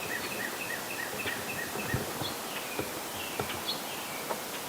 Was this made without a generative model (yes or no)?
yes